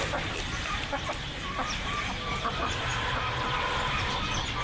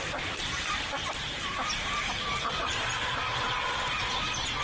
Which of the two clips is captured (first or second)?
first